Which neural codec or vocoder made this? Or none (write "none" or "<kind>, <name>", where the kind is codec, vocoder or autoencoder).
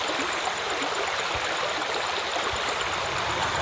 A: none